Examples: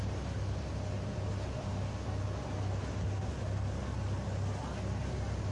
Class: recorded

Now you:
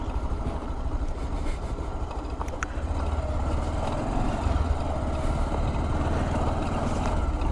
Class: recorded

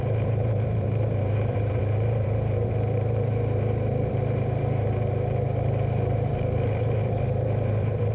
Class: remade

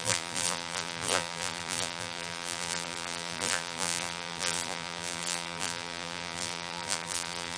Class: remade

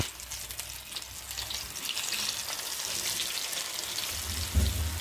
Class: recorded